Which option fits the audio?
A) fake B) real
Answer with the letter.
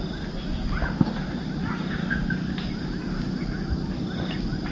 B